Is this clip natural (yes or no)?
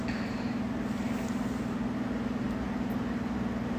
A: yes